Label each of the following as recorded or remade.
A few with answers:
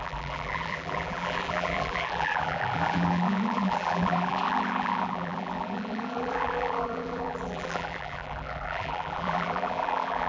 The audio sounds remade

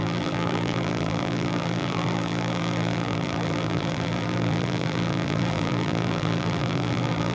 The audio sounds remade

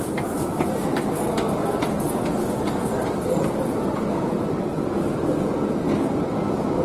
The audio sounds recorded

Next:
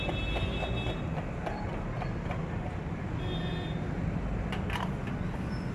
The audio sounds recorded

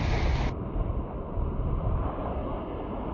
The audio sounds recorded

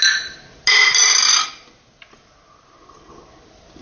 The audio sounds recorded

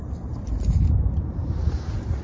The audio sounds remade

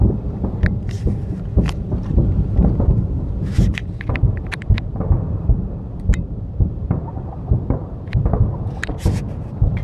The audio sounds remade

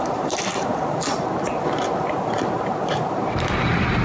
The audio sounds remade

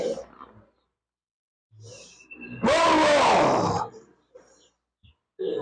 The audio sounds recorded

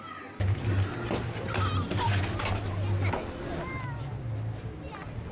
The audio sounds recorded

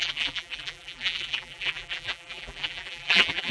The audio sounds remade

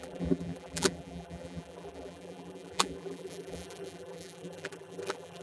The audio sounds remade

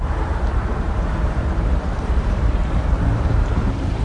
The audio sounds remade